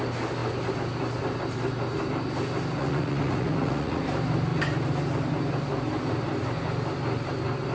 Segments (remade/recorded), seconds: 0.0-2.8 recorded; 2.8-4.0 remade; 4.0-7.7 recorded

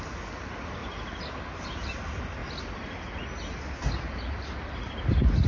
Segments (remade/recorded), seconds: 0.0-5.5 recorded

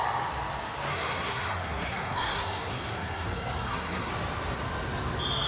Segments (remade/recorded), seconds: 0.0-0.9 recorded; 0.9-4.1 remade; 4.1-5.5 recorded